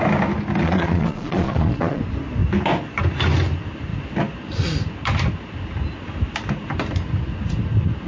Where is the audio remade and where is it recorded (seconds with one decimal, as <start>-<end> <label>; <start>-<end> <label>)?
0.0-0.6 recorded; 0.6-2.0 remade; 2.0-8.1 recorded

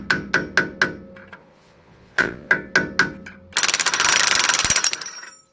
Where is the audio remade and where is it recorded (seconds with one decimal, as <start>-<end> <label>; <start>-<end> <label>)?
0.0-1.4 recorded; 1.4-2.5 remade; 2.5-5.5 recorded

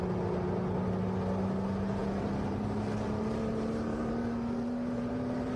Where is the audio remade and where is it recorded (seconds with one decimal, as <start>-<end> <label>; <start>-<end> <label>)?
0.0-2.0 recorded; 2.0-5.6 remade

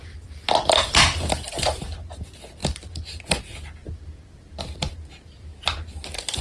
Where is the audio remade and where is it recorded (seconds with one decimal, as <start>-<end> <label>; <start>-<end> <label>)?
0.0-5.5 remade; 5.5-6.4 recorded

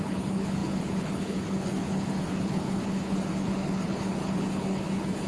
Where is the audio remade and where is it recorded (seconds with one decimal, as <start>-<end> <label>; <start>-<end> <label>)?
0.0-5.3 remade

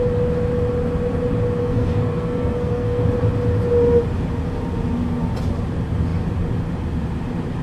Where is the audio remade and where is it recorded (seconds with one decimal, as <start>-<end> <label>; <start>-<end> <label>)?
0.0-1.6 recorded; 1.6-3.0 remade; 3.0-7.6 recorded